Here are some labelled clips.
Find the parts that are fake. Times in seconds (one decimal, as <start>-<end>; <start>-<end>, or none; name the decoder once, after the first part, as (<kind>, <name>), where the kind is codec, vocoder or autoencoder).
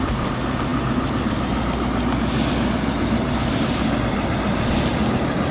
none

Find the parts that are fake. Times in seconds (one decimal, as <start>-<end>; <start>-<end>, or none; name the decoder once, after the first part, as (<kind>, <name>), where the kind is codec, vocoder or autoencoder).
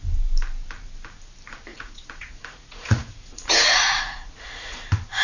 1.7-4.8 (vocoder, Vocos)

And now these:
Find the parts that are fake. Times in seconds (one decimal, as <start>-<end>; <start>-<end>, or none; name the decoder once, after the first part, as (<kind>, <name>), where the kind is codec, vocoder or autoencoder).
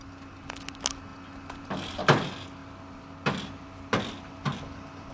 none